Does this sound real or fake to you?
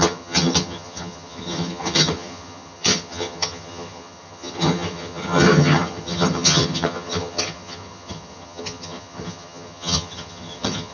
fake